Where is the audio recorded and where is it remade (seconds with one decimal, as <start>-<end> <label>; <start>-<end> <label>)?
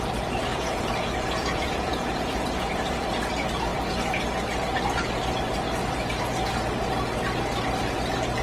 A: 0.0-0.5 recorded; 0.5-3.1 remade; 3.1-8.4 recorded